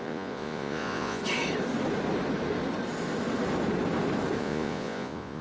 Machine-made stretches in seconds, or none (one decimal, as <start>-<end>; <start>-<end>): 0.0-1.2; 4.4-5.4